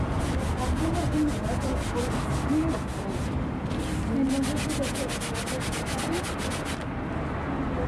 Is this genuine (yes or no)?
yes